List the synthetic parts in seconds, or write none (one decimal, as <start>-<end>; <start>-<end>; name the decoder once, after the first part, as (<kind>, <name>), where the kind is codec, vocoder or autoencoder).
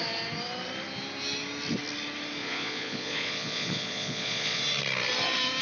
2.4-4.6 (vocoder, Vocos)